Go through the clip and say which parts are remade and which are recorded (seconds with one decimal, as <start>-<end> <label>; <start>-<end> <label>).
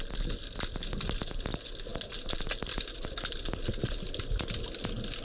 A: 0.0-5.2 recorded